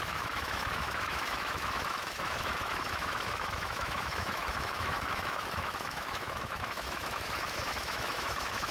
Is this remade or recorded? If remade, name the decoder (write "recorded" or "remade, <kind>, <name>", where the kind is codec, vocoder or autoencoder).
remade, autoencoder, DAC-VAE